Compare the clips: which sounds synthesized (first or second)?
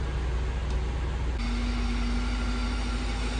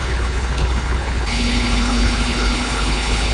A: second